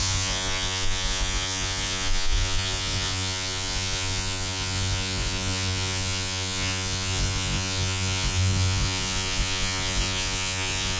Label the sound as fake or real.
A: fake